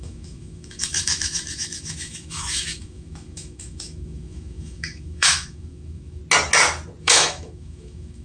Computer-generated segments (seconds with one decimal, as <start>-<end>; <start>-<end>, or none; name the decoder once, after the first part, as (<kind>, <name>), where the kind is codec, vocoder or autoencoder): 0.0-6.2 (autoencoder, DAC-VAE); 7.0-8.2